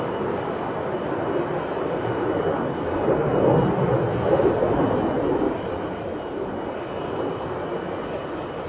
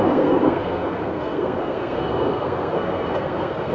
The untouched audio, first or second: first